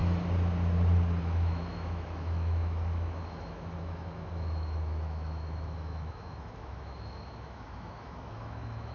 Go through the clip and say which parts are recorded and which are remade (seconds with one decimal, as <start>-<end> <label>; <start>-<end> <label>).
0.0-1.2 recorded; 1.2-8.9 remade